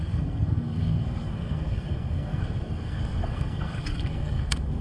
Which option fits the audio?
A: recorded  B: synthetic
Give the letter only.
B